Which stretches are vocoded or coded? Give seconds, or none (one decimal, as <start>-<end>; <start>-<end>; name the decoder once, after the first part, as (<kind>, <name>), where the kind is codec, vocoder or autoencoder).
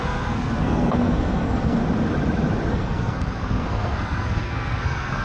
0.0-1.8 (codec, SNAC); 2.7-5.2